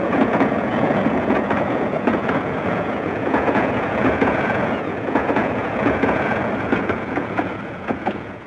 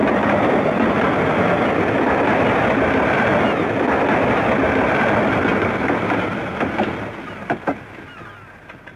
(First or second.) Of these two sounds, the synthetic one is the first